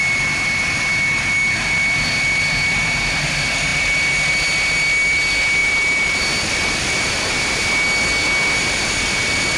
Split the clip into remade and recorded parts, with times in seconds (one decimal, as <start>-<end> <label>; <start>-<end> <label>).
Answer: 0.0-5.6 recorded; 5.6-6.2 remade; 6.2-9.6 recorded